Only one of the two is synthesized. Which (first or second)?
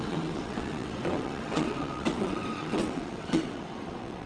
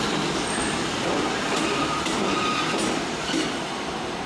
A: first